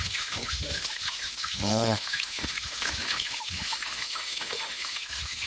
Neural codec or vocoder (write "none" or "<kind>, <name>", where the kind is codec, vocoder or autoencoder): autoencoder, DAC-VAE